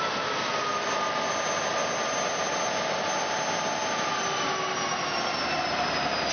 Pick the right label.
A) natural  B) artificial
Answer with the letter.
A